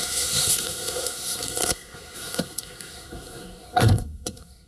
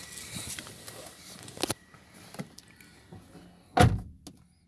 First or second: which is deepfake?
first